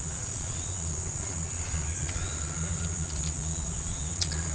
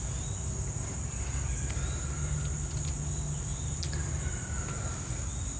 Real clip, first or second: second